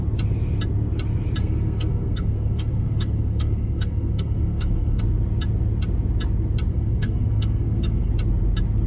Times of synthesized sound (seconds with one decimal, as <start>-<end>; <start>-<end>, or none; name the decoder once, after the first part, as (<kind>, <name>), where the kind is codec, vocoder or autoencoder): 1.4-5.0 (codec, SNAC); 6.7-8.1